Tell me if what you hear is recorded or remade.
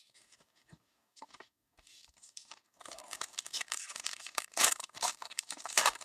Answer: remade